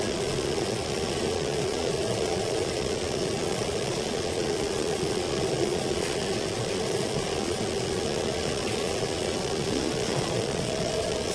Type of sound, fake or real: fake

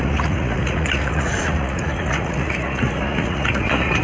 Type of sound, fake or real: fake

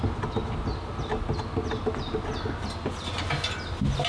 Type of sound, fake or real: real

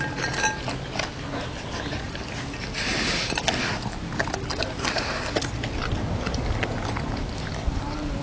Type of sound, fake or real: real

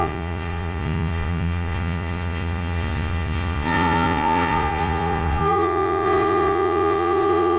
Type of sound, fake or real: fake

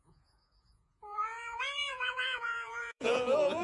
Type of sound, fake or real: fake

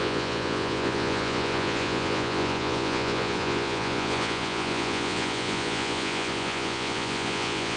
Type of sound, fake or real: fake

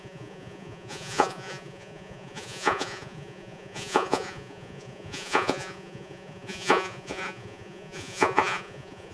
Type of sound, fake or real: fake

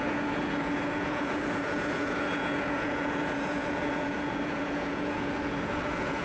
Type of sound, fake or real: fake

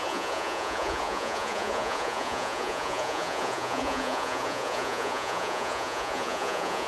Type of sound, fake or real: fake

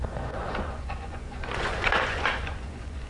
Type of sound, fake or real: fake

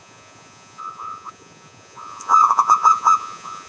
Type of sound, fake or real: fake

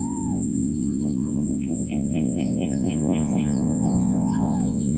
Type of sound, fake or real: fake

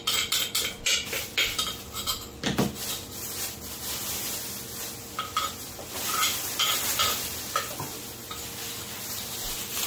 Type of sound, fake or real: real